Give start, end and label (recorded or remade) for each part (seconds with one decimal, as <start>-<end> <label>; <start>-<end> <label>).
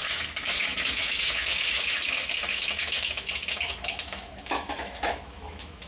0.0-5.9 remade